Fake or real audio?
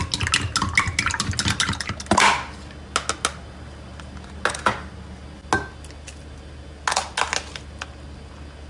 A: real